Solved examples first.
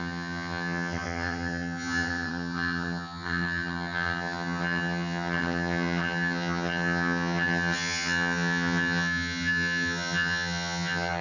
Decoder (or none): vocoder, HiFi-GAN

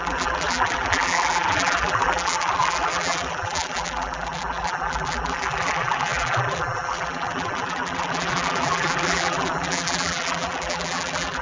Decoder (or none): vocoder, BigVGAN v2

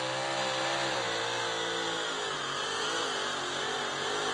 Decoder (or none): none